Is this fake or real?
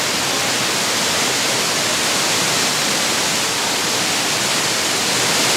real